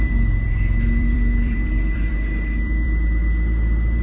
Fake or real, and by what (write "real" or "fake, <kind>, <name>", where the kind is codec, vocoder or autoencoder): fake, vocoder, BigVGAN v2